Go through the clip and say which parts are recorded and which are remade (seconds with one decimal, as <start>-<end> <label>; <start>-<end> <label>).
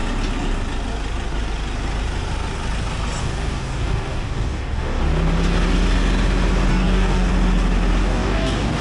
0.0-3.2 recorded; 3.2-5.0 remade; 5.0-6.7 recorded; 6.7-7.3 remade; 7.3-8.0 recorded; 8.0-8.8 remade